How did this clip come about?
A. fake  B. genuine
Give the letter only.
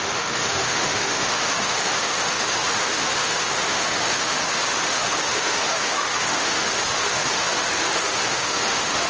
A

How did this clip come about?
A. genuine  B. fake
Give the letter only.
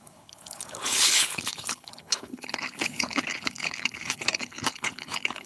B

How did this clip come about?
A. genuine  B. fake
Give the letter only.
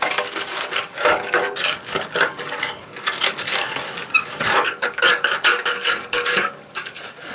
B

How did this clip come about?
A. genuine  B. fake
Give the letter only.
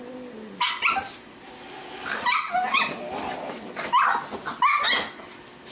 A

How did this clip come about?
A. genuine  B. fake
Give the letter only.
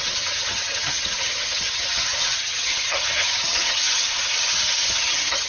B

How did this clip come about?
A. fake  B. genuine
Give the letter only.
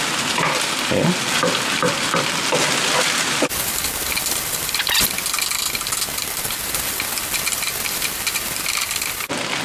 B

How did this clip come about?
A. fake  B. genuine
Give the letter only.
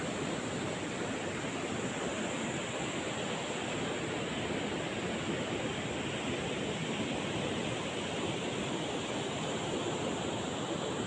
B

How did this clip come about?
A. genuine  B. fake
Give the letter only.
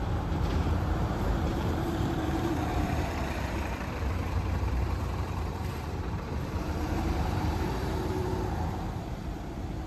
B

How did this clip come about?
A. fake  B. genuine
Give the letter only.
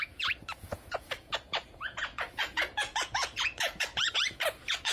A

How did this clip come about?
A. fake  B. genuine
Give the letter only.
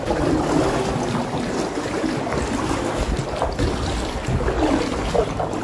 B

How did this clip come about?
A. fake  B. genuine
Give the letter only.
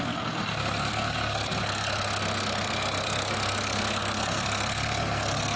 A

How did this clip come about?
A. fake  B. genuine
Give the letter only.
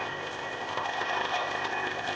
A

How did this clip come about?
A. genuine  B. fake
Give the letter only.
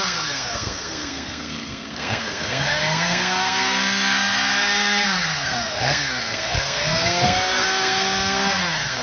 B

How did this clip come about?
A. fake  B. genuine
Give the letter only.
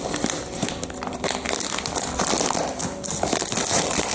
B